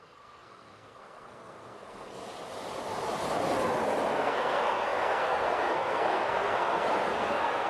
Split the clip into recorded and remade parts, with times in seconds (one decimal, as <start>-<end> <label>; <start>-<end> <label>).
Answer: 0.0-2.2 remade; 2.2-4.1 recorded; 4.1-7.7 remade